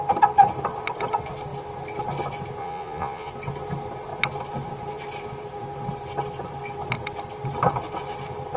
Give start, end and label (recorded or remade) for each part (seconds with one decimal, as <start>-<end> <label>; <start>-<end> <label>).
0.0-2.6 recorded; 2.6-3.3 remade; 3.3-8.6 recorded